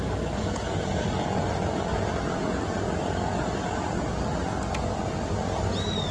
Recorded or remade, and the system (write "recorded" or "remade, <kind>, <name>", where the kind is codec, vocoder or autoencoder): recorded